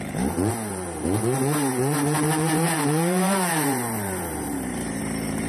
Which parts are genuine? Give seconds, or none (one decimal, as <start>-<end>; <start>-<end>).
none